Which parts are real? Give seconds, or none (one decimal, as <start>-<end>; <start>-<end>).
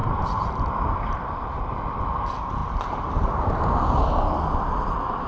2.0-2.6; 3.1-5.3